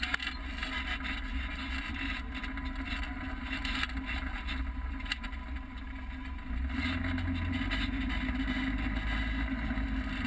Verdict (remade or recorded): recorded